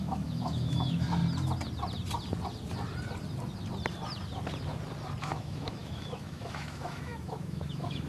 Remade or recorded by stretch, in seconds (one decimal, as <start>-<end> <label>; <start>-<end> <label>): 0.0-1.2 remade; 1.2-5.2 recorded; 5.2-8.1 remade